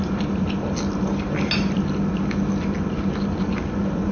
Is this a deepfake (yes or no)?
no